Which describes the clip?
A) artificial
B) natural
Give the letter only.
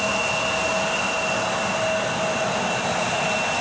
B